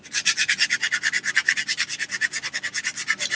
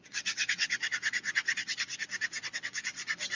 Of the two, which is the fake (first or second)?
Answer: second